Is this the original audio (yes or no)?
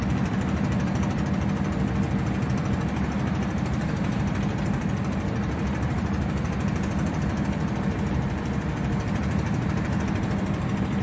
no